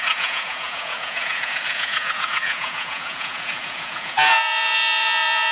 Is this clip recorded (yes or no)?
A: no